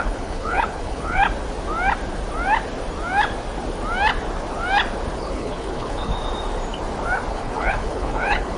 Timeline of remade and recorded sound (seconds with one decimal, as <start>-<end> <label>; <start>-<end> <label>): 0.0-1.2 remade; 1.2-5.2 recorded; 5.2-6.1 remade; 6.1-7.3 recorded; 7.3-8.6 remade